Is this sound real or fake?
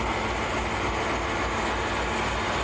real